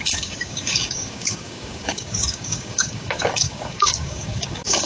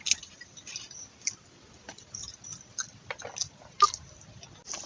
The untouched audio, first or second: second